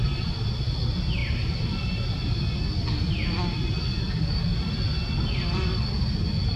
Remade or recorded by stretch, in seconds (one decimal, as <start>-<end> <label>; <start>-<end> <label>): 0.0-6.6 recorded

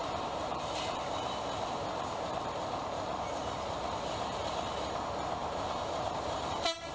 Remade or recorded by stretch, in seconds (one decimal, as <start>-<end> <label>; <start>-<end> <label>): 0.0-6.9 remade

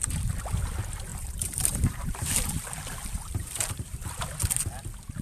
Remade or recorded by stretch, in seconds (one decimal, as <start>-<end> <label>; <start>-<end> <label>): 0.0-1.1 recorded; 1.1-4.2 remade; 4.2-5.2 recorded

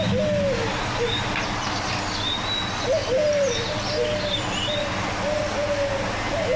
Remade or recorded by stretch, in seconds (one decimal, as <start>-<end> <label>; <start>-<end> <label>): 0.0-3.0 recorded; 3.0-3.7 remade; 3.7-6.6 recorded

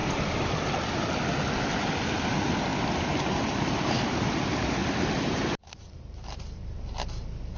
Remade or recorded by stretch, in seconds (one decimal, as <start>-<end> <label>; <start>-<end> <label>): 0.0-7.6 recorded